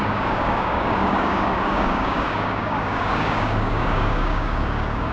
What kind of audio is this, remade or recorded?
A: remade